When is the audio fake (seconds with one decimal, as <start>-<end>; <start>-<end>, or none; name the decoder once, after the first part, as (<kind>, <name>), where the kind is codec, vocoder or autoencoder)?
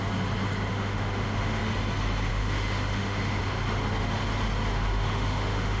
0.7-1.6 (autoencoder, DAC-VAE); 2.3-3.4; 4.7-5.8